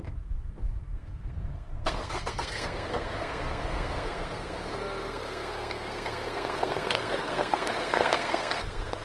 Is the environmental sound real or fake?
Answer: fake